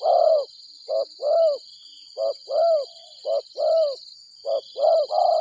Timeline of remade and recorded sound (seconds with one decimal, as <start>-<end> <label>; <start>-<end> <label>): 0.0-5.4 recorded